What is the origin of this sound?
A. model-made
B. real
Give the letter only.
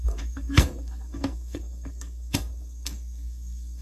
A